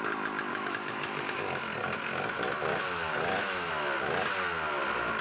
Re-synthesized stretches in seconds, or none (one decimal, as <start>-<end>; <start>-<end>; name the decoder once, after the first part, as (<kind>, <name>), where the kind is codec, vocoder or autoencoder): 0.5-1.4 (autoencoder, DAC-VAE); 2.7-3.7